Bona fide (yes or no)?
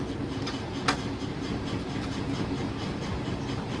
yes